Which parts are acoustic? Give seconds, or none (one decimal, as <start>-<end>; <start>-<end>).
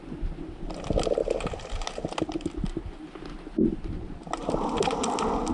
0.0-5.5